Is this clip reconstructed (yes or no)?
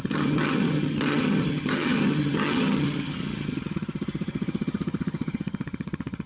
yes